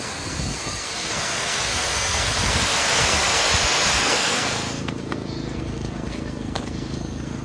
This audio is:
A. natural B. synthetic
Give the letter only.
B